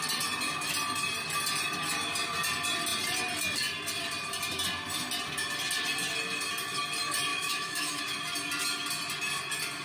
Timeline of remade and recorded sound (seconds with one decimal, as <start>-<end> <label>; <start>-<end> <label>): 0.0-7.3 recorded; 7.3-8.0 remade; 8.0-9.8 recorded